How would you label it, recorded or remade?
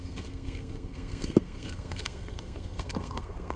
remade